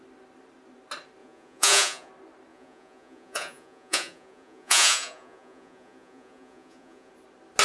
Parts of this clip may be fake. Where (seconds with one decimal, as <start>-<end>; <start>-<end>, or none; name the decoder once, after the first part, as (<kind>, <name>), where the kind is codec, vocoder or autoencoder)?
1.2-2.1 (vocoder, Vocos); 2.5-7.1